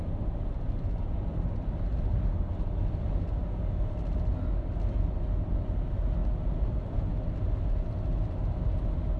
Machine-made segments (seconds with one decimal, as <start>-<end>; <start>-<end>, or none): none